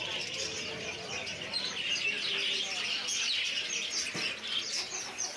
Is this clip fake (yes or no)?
no